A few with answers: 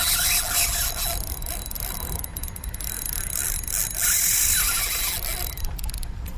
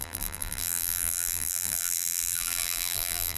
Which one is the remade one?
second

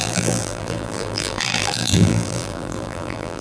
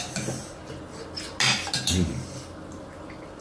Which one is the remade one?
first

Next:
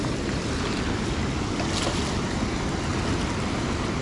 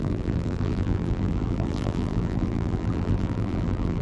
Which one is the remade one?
second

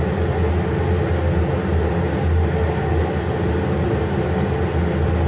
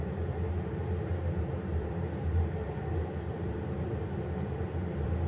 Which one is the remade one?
second